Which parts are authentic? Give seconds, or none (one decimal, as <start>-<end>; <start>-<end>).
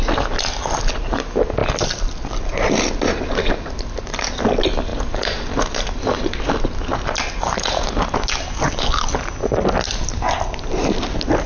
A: 0.0-1.6; 2.3-11.5